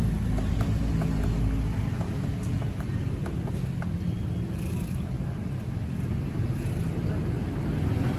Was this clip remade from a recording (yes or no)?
no